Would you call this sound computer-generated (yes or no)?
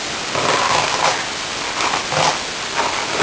no